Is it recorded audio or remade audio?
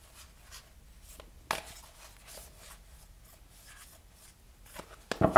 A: recorded